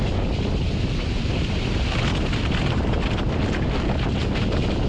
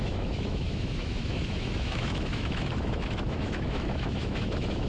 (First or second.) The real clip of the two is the first